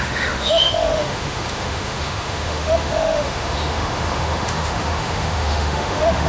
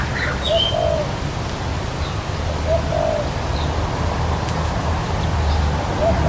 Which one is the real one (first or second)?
second